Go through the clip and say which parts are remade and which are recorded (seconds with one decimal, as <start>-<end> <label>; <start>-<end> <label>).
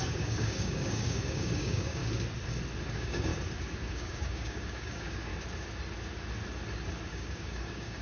0.0-2.0 remade; 2.0-2.9 recorded; 2.9-3.3 remade; 3.3-3.9 recorded; 3.9-5.3 remade; 5.3-7.1 recorded; 7.1-8.0 remade